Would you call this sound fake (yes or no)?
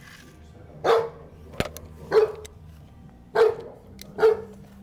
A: no